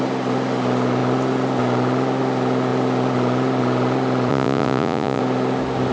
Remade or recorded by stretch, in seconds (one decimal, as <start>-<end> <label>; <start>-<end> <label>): 0.0-4.3 recorded; 4.3-5.2 remade; 5.2-5.9 recorded